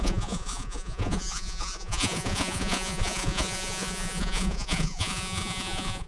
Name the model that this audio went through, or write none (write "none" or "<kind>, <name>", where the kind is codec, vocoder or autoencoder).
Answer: vocoder, Vocos